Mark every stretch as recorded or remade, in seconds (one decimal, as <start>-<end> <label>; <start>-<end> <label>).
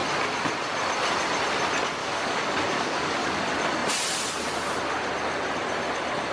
0.0-2.0 recorded; 2.0-3.4 remade; 3.4-6.3 recorded